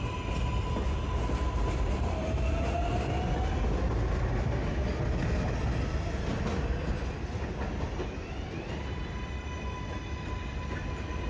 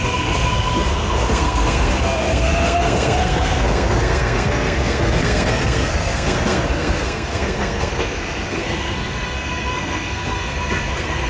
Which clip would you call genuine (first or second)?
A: first